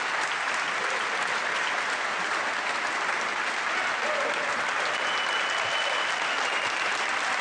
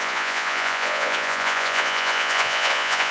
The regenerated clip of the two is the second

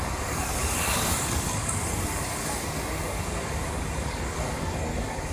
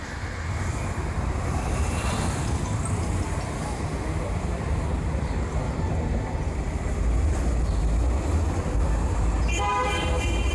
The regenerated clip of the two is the first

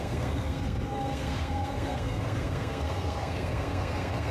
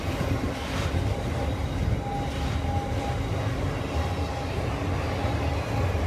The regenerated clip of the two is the first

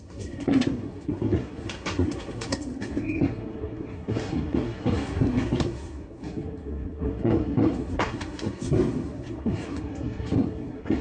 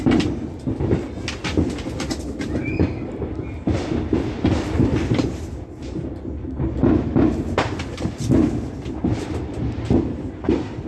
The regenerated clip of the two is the first